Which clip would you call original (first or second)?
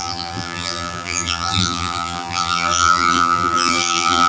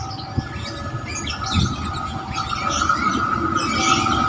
second